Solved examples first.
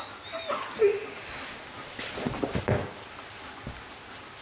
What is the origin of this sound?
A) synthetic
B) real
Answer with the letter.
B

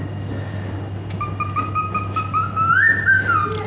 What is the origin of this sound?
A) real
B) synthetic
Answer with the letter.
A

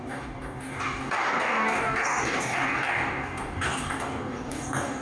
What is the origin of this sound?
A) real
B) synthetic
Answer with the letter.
B